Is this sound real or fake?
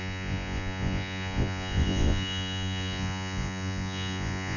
fake